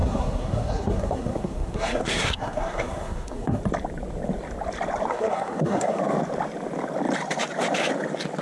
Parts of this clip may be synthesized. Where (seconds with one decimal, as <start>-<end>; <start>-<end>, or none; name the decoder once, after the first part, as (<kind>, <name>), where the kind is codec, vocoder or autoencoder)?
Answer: 0.0-3.6 (codec, SNAC); 5.1-6.0